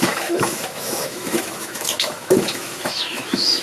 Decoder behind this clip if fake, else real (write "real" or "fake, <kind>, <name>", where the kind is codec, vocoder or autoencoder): fake, autoencoder, DAC-VAE